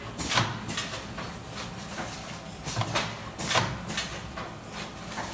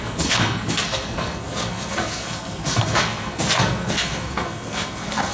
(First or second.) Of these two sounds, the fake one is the second